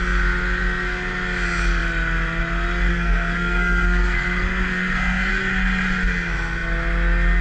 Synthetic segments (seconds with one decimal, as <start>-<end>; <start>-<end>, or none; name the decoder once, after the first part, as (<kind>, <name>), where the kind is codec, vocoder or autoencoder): 2.9-5.3 (codec, SNAC)